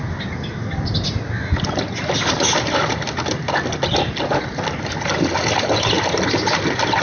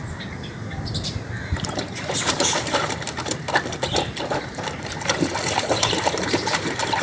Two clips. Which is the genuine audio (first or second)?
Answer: first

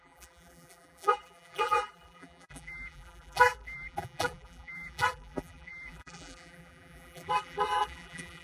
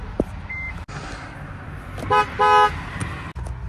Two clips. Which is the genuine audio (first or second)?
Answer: second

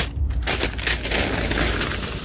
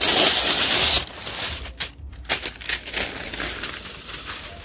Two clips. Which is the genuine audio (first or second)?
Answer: first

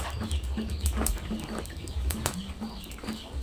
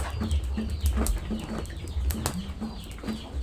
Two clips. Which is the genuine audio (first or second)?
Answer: second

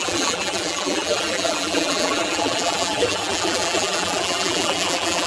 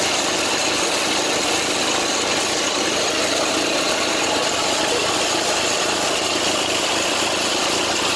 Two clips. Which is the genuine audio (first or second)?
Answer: second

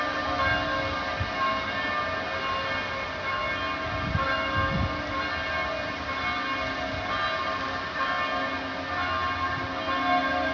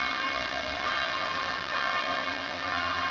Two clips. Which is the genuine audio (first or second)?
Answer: first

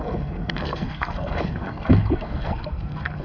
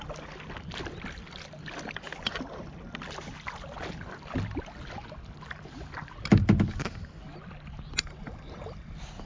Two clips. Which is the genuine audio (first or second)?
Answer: second